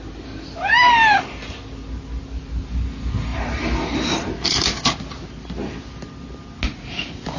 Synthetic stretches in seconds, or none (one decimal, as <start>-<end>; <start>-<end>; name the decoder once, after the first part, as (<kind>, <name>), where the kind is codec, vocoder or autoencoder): none